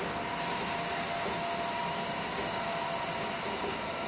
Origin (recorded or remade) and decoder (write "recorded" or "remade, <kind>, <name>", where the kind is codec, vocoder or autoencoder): recorded